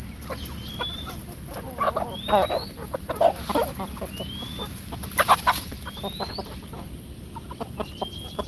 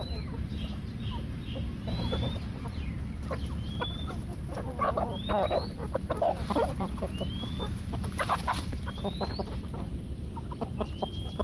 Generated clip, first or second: second